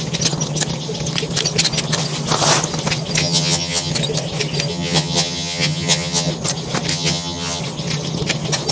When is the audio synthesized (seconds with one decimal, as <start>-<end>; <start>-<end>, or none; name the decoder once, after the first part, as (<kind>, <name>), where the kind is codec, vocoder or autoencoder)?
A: 3.2-3.9 (vocoder, HiFi-GAN); 4.7-6.3; 6.9-7.6